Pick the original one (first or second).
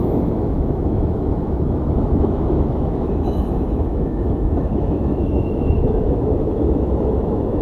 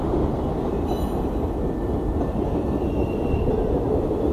second